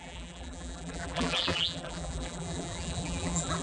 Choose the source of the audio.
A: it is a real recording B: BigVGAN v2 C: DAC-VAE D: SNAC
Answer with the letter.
B